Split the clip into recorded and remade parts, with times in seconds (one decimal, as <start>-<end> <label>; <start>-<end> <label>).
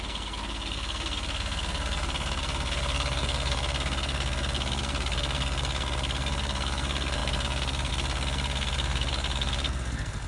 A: 0.0-10.3 remade